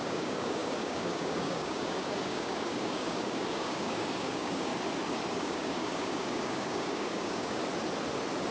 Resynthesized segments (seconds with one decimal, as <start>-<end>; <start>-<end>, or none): 0.0-4.7; 5.3-7.6